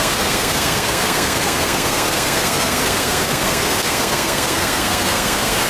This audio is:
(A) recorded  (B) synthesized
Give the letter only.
B